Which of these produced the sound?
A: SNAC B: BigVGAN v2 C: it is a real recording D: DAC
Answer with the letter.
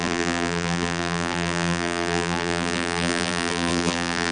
B